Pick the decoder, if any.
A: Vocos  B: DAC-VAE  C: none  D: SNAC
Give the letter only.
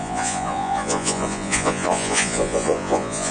A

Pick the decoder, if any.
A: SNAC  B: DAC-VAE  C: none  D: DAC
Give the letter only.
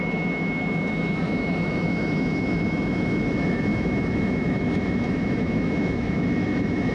B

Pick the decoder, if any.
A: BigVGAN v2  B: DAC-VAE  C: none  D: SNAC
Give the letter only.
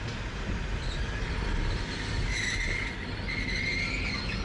C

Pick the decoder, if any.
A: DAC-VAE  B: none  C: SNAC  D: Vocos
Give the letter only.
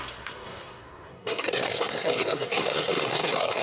C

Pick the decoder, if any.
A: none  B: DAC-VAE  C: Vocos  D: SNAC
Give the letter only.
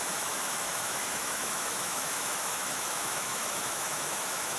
B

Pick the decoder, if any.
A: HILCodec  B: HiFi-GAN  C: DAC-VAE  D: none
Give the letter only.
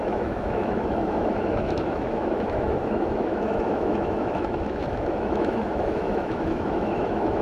C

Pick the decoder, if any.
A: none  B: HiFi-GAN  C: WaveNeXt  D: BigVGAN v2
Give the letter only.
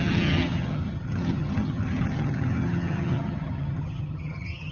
B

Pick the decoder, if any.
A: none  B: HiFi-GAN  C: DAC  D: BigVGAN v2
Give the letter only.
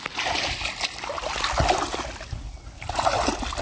A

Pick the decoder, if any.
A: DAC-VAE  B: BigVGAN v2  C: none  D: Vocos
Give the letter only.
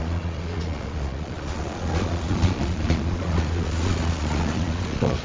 D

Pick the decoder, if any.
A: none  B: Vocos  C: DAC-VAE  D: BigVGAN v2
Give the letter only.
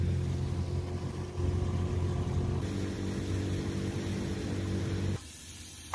A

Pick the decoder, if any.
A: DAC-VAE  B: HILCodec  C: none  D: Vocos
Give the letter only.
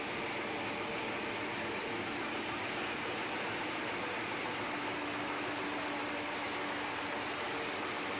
C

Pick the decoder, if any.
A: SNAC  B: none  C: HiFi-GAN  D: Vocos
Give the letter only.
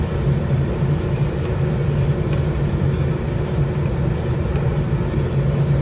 B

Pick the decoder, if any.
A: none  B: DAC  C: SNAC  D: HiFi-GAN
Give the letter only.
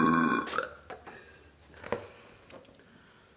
A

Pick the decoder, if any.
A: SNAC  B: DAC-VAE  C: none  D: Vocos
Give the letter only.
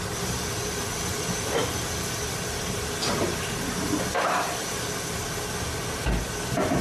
C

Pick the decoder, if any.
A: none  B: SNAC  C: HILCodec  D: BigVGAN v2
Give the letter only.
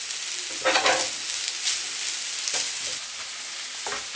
A